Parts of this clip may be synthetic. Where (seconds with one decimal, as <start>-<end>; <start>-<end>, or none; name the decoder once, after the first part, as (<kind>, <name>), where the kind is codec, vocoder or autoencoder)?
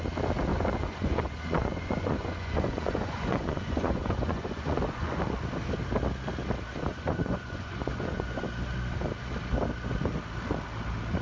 0.5-5.2 (vocoder, Vocos); 6.9-8.4